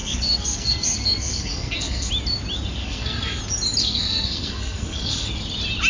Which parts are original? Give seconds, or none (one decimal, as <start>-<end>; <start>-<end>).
2.1-2.8; 3.4-3.8; 5.3-5.9